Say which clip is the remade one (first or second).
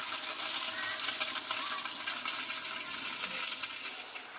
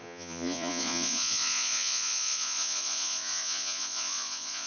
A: second